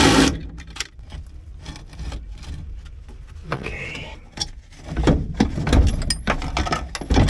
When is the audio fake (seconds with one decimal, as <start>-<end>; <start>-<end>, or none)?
3.4-3.9